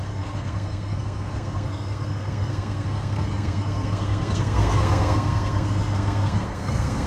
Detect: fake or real fake